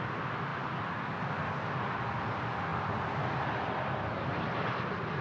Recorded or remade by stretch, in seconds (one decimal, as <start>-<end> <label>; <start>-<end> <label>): 0.0-5.2 recorded